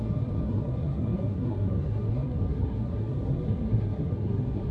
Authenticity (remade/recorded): remade